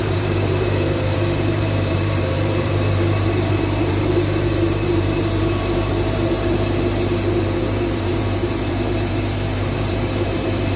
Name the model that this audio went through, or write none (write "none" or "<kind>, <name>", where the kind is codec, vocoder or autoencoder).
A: vocoder, BigVGAN v2